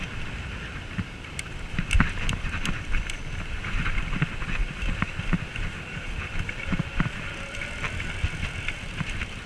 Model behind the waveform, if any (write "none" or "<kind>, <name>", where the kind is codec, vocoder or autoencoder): none